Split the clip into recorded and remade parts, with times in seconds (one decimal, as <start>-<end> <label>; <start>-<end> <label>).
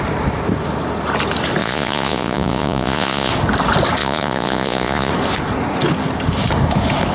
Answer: 0.0-1.6 recorded; 1.6-3.3 remade; 3.3-4.0 recorded; 4.0-5.1 remade; 5.1-7.1 recorded